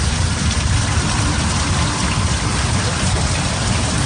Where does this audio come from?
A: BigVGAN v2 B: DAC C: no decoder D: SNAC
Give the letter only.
C